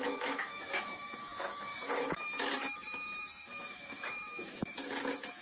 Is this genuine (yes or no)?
no